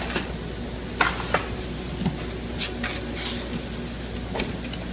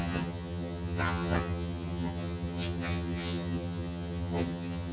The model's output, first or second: second